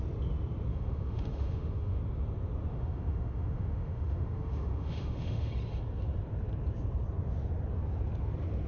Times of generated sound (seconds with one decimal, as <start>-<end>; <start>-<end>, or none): 0.7-2.0; 2.7-5.5